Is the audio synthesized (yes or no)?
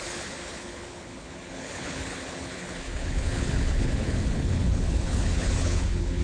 yes